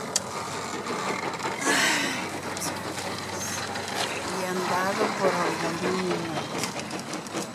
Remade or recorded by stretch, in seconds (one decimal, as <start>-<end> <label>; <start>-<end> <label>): 0.0-7.5 recorded